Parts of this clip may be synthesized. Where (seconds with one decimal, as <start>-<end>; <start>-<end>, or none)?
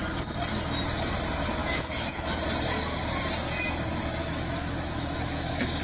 1.6-2.4; 4.2-5.8